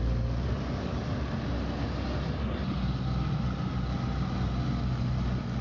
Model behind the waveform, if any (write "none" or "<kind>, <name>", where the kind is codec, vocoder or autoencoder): none